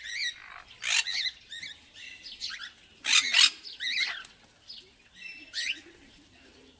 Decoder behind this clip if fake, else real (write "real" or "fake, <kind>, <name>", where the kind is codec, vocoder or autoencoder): real